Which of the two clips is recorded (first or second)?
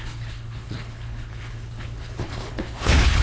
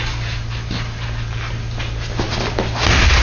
second